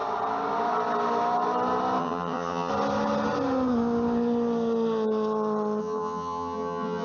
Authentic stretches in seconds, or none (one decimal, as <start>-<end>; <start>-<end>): 0.0-2.0; 2.7-5.8